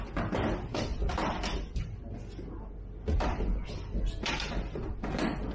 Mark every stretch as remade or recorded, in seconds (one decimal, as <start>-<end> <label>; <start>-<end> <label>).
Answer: 0.0-5.5 recorded